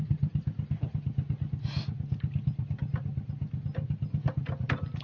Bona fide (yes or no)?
yes